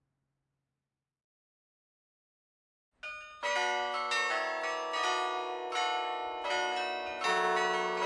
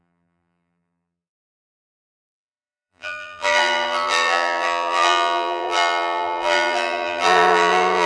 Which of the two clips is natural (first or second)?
first